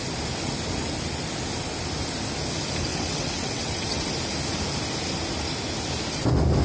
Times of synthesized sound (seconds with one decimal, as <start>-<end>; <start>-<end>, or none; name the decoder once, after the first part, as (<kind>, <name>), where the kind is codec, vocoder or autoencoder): 2.9-4.1 (vocoder, WaveNeXt)